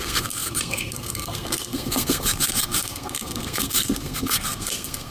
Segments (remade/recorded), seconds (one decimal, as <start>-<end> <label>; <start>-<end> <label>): 0.0-5.1 remade